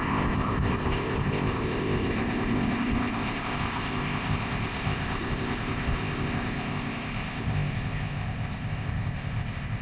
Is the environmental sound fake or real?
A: fake